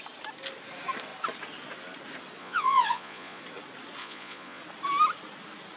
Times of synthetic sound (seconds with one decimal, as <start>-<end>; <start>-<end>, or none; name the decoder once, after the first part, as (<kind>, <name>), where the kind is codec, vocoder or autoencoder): 2.4-3.4 (vocoder, Vocos); 4.0-4.6